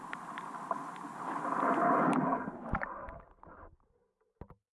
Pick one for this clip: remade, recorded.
recorded